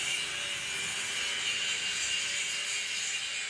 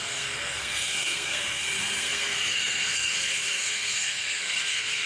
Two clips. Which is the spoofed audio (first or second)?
second